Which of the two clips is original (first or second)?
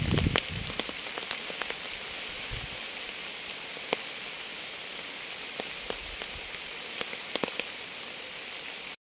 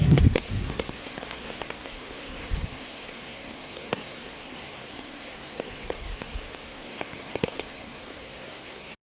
first